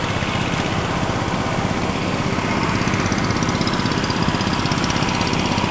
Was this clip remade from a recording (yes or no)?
no